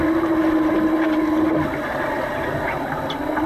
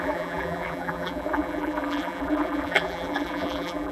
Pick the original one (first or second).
first